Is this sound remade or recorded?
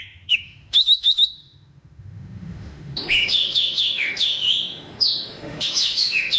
remade